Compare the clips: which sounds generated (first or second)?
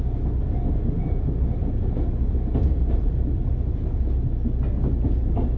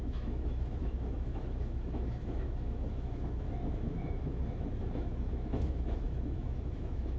second